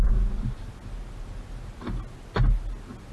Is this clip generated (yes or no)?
no